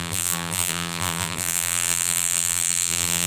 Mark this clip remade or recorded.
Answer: remade